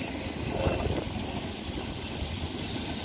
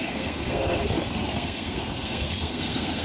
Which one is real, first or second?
first